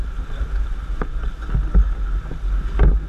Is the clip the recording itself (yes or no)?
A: yes